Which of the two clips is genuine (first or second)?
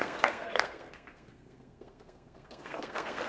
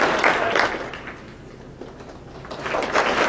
second